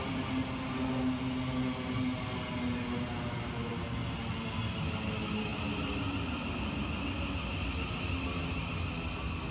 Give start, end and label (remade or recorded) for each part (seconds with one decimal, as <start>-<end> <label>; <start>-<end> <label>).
0.0-9.5 recorded